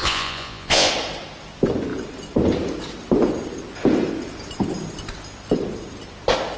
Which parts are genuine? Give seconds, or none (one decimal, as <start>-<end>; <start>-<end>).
0.9-6.6

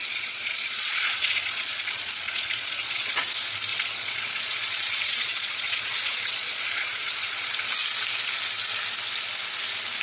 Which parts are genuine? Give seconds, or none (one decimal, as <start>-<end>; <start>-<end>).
3.2-3.7; 7.6-10.0

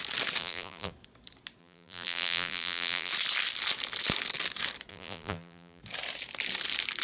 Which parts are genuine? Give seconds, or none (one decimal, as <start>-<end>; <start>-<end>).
0.0-0.4; 0.9-1.6; 3.1-4.9; 5.8-7.0

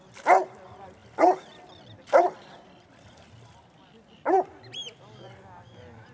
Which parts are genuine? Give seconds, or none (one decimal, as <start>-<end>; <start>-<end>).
0.0-6.1

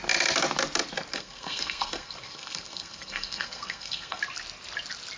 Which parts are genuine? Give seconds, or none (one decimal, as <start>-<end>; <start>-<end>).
0.0-1.1; 4.2-5.2

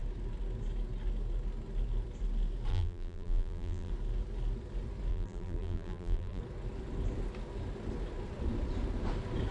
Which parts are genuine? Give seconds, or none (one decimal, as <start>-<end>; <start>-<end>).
0.0-2.7; 3.9-5.1; 6.4-9.5

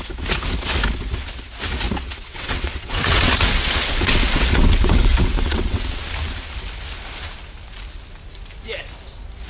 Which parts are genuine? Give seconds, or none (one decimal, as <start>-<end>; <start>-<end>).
0.0-2.0; 6.0-9.5